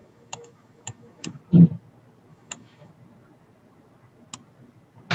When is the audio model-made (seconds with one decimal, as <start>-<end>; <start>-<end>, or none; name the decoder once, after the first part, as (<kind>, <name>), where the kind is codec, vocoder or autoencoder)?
0.0-1.4 (autoencoder, DAC-VAE); 2.3-2.9

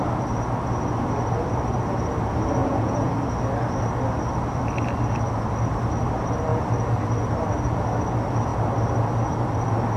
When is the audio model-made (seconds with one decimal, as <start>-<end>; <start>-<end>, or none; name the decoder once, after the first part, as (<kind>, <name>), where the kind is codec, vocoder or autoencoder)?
2.6-3.1 (vocoder, Vocos)

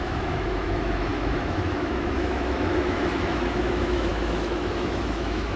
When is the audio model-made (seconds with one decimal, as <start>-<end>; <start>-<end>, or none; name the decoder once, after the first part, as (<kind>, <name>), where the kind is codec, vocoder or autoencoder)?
0.0-5.6 (autoencoder, DAC-VAE)

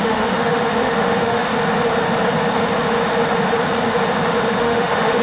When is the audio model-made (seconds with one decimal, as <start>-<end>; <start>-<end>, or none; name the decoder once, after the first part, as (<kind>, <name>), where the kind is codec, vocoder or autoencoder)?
0.0-1.5 (autoencoder, DAC-VAE); 4.6-5.2

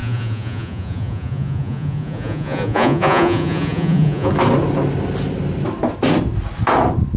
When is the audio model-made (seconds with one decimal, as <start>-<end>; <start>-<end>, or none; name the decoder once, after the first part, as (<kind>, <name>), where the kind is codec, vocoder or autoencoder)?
0.0-4.3 (vocoder, Vocos)

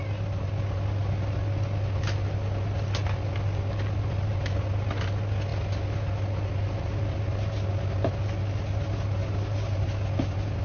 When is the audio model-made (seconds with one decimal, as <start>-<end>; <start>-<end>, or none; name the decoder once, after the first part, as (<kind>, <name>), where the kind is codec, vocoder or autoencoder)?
none

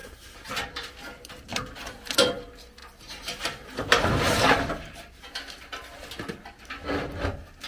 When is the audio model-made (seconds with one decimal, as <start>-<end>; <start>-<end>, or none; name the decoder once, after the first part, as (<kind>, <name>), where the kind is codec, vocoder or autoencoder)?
0.0-0.5 (vocoder, BigVGAN v2); 1.5-2.1; 2.8-4.8

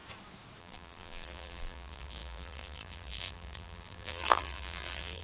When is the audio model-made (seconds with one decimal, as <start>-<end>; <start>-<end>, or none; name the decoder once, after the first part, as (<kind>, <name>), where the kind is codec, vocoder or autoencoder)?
0.6-5.2 (vocoder, BigVGAN v2)